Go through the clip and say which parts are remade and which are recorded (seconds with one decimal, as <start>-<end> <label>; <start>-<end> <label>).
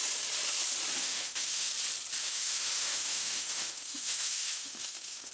0.0-1.0 recorded; 1.0-1.7 remade; 1.7-2.2 recorded; 2.2-5.3 remade